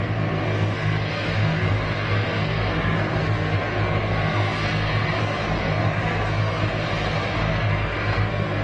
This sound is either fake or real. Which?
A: fake